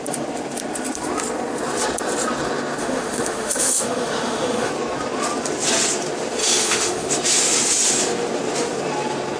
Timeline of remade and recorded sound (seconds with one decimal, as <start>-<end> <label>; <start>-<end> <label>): 0.0-2.8 recorded; 2.8-4.7 remade; 4.7-6.4 recorded; 6.4-7.1 remade; 7.1-9.4 recorded